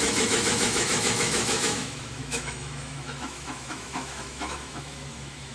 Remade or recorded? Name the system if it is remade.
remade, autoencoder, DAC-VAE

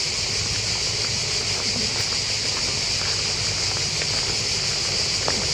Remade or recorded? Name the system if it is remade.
recorded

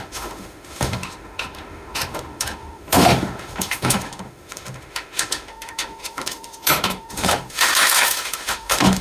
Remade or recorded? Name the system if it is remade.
remade, autoencoder, DAC-VAE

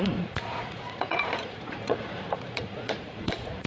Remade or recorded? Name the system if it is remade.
remade, vocoder, Vocos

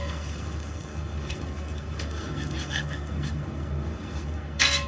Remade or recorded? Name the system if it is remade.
remade, codec, SNAC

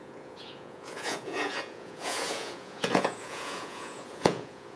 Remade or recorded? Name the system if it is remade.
remade, vocoder, Vocos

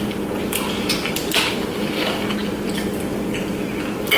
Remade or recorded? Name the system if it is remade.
recorded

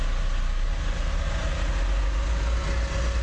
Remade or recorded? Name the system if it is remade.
recorded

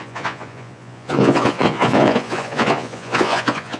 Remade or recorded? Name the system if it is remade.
remade, vocoder, Vocos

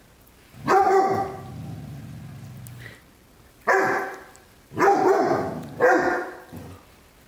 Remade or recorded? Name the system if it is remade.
remade, vocoder, BigVGAN v2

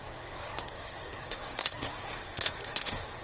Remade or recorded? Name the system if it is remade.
remade, codec, SNAC